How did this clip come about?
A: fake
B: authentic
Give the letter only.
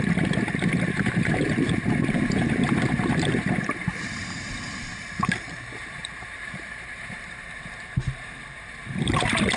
A